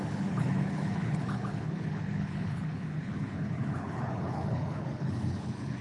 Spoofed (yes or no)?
yes